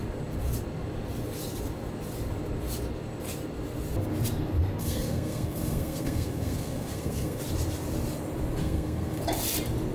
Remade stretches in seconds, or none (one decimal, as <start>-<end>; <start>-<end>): 4.8-7.4; 8.6-9.2